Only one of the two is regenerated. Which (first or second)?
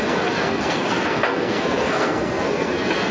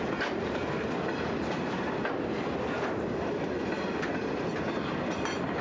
first